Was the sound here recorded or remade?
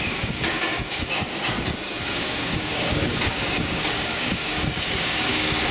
remade